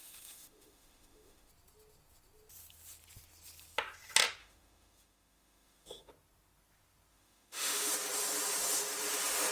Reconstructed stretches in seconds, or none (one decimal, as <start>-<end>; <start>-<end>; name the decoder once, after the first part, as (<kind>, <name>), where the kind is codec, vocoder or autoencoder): 0.0-1.5 (autoencoder, DAC-VAE); 4.4-6.1; 7.1-7.9